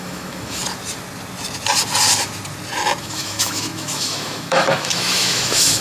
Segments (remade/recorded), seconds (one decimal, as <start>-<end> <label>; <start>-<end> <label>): 0.0-0.6 remade; 0.6-3.0 recorded; 3.0-5.8 remade